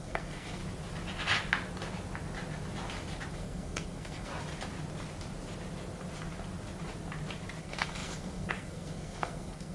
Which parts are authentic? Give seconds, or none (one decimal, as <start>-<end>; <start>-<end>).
0.6-3.3; 4.3-7.6